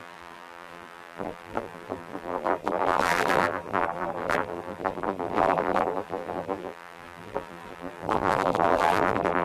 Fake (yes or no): yes